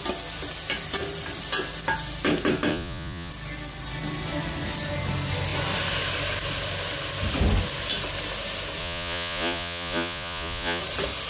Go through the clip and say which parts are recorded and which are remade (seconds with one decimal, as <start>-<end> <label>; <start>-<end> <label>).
0.0-2.7 recorded; 2.7-3.3 remade; 3.3-8.8 recorded; 8.8-10.8 remade; 10.8-11.3 recorded